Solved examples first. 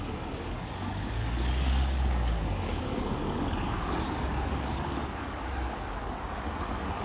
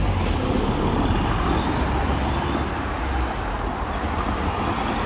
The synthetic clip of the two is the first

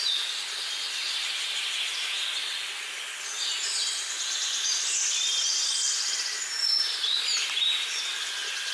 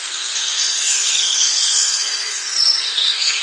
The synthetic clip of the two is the second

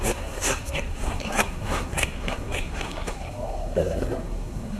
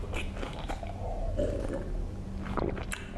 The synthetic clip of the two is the first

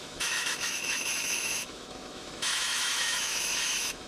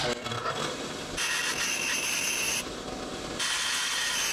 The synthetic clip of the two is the first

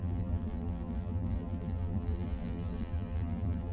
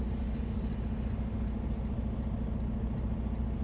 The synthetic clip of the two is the first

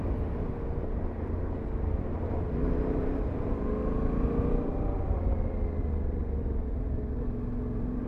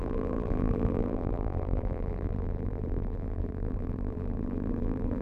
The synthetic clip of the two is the second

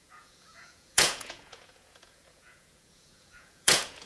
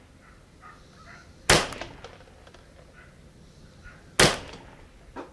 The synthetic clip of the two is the first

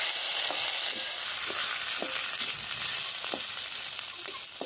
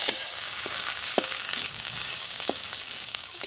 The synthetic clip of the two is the second